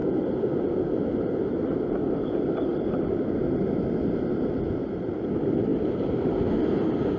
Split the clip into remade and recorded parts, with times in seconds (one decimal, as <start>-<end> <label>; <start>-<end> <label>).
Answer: 0.0-7.2 recorded